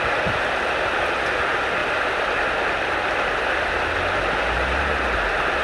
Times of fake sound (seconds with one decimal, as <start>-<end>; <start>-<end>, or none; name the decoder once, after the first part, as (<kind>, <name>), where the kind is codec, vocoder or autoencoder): none